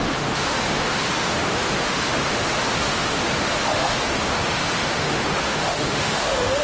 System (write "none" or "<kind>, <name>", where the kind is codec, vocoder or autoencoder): autoencoder, DAC-VAE